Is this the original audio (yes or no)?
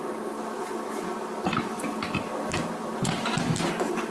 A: yes